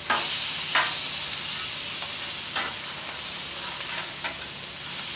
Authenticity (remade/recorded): recorded